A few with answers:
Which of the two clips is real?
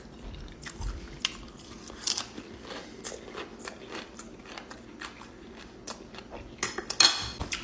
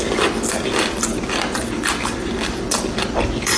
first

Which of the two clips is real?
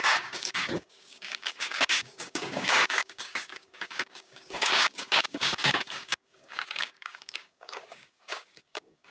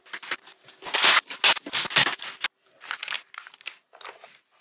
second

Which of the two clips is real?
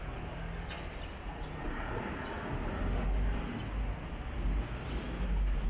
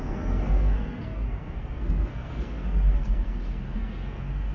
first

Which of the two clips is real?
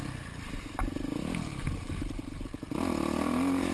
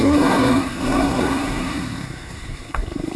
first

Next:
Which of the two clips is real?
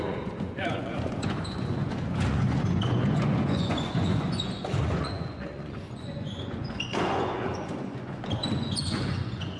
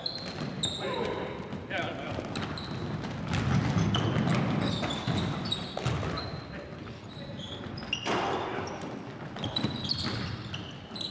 second